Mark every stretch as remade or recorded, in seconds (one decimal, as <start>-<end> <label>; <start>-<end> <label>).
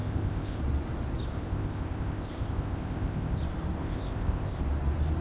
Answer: 0.0-0.6 remade; 0.6-1.3 recorded; 1.3-3.4 remade; 3.4-3.8 recorded; 3.8-4.6 remade; 4.6-5.2 recorded